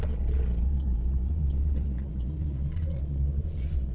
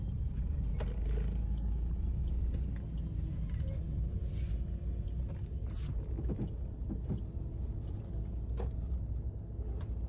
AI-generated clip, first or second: first